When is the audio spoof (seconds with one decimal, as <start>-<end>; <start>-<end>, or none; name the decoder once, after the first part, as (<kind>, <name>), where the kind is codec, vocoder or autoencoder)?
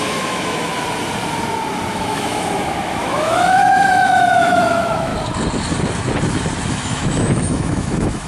0.0-0.7 (autoencoder, DAC-VAE); 1.9-5.1; 6.7-8.3